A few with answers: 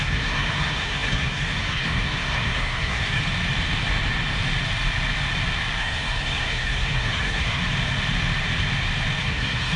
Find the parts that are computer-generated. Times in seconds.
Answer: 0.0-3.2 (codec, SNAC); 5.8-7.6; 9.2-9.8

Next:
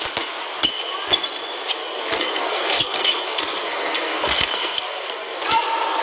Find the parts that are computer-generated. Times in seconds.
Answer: 1.8-5.4 (codec, SNAC)

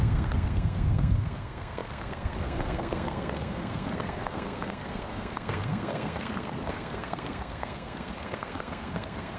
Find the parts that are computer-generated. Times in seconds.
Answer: 0.0-9.4 (codec, SNAC)